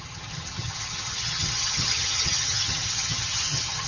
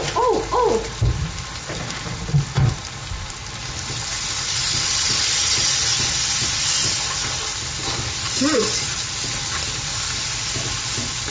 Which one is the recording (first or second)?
second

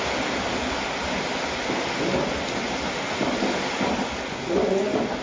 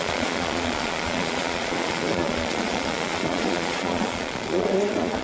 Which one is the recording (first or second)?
first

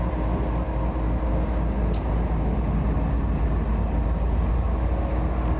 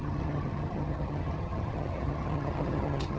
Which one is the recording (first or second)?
first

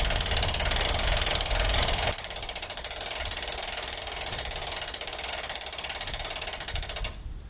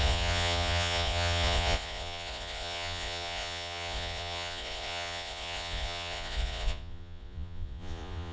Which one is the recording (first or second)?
first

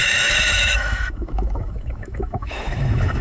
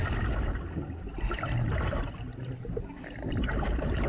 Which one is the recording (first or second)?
second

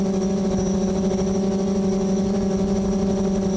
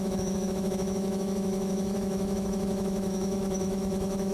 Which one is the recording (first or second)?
first